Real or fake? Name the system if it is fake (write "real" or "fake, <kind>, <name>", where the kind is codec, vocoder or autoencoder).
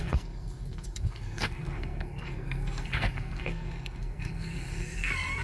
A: fake, codec, SNAC